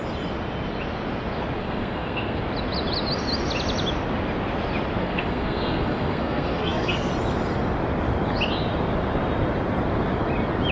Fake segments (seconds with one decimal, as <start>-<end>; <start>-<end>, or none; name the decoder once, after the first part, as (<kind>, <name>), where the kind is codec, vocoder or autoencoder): 1.6-2.4 (codec, SNAC); 5.0-7.1